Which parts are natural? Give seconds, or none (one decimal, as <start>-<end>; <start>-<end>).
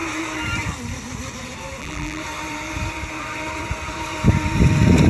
0.0-1.8; 2.2-5.1